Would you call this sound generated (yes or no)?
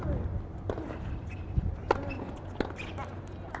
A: no